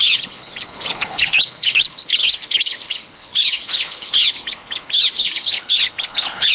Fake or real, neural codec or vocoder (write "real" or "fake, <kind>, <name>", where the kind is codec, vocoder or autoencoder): fake, codec, HILCodec